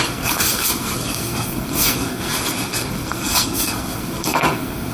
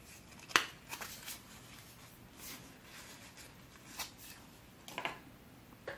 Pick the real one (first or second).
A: second